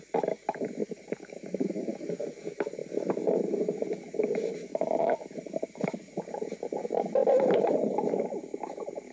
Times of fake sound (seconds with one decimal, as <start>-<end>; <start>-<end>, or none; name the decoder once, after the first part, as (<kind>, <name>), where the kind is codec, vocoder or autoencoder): 0.8-2.1 (vocoder, BigVGAN v2); 4.7-5.8